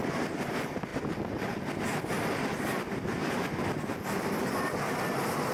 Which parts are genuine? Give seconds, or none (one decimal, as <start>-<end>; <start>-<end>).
0.0-5.5